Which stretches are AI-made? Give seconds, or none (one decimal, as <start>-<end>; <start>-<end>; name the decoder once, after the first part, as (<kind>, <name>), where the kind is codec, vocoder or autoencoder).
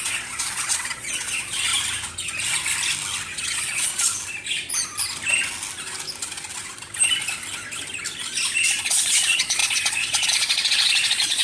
0.0-1.7 (vocoder, Vocos); 3.4-3.9; 8.8-11.4